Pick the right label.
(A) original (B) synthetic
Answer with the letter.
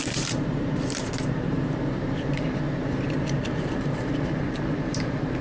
B